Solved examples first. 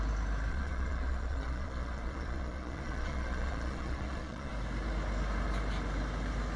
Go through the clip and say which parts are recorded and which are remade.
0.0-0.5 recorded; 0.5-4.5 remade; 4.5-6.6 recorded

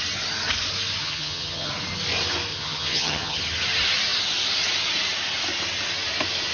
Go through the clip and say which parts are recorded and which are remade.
0.0-1.0 recorded; 1.0-1.7 remade; 1.7-2.5 recorded; 2.5-3.4 remade; 3.4-6.5 recorded

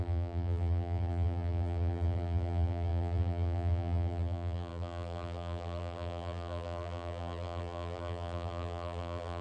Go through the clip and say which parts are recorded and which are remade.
0.0-9.4 remade

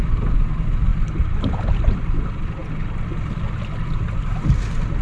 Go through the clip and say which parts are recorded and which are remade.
0.0-5.0 recorded

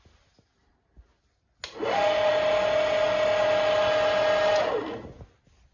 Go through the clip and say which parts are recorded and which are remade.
0.0-5.7 recorded

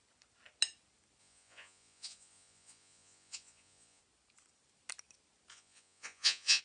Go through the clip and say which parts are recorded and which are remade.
0.0-1.2 recorded; 1.2-4.0 remade; 4.0-5.5 recorded; 5.5-6.6 remade

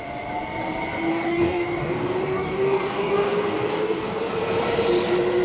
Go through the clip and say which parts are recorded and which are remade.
0.0-1.1 recorded; 1.1-4.3 remade; 4.3-5.4 recorded

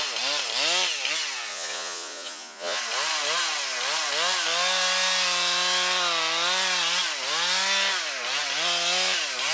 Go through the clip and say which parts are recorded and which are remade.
0.0-1.5 recorded; 1.5-2.8 remade; 2.8-9.5 recorded